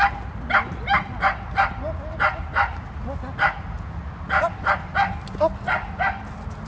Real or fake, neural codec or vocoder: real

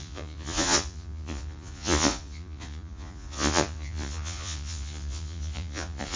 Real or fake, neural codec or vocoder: fake, vocoder, Vocos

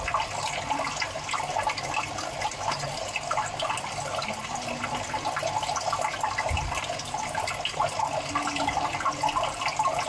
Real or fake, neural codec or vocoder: real